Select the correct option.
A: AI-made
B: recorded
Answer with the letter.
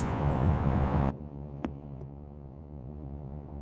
A